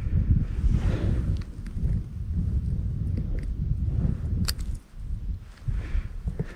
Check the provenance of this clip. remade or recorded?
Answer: recorded